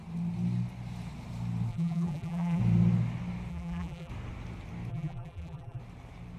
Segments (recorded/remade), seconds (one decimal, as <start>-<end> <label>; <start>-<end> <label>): 0.0-1.7 recorded; 1.7-2.6 remade; 2.6-3.5 recorded; 3.5-4.1 remade; 4.1-4.9 recorded; 4.9-5.8 remade; 5.8-6.4 recorded